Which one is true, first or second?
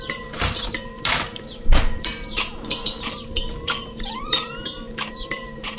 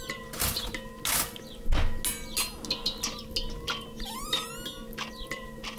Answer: second